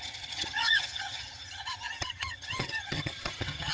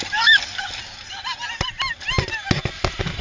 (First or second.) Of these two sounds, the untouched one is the second